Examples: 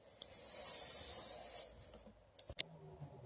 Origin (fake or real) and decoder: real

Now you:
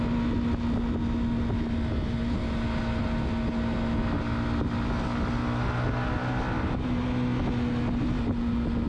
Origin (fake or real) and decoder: real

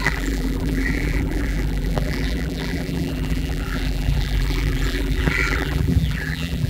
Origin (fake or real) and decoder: fake, vocoder, BigVGAN v2